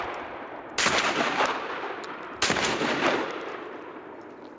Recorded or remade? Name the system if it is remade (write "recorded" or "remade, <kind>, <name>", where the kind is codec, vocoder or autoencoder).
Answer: recorded